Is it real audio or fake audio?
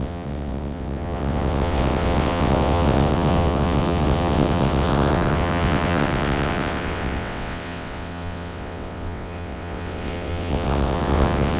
fake